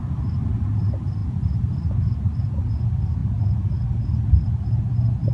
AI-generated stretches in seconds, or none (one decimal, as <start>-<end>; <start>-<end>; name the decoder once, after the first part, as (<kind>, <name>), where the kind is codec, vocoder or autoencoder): none